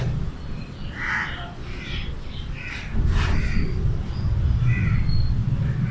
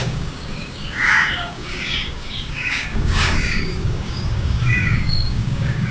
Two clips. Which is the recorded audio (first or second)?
first